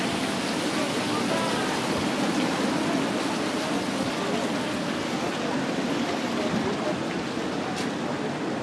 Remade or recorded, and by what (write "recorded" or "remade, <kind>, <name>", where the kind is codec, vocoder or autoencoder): recorded